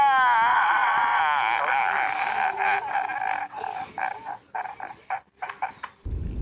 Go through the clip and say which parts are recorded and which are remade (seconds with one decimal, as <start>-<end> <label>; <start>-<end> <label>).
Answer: 0.0-0.5 recorded; 0.5-1.2 remade; 1.2-6.4 recorded